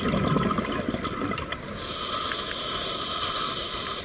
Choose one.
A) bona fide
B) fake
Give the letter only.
A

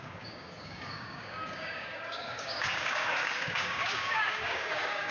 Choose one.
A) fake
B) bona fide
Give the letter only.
A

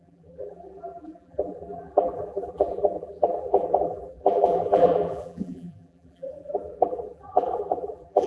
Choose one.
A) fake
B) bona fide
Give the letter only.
A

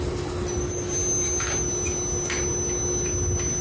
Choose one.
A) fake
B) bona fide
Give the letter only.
B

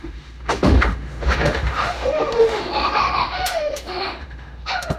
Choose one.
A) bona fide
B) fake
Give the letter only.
B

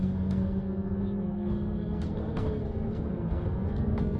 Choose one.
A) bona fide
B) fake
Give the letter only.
B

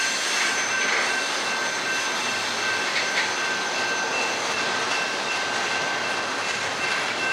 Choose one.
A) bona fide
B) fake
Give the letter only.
A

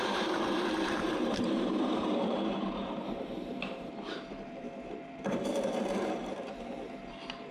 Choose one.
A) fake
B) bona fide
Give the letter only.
A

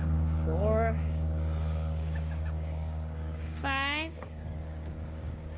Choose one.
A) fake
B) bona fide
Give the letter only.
A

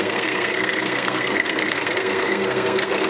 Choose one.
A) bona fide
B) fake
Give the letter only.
B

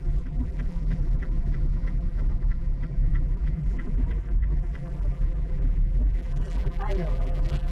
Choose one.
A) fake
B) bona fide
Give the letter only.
A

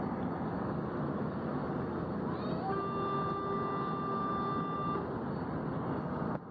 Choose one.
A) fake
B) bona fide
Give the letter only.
B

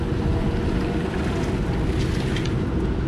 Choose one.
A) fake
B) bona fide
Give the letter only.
B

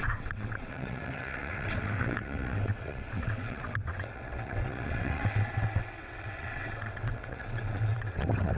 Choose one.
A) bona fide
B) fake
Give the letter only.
B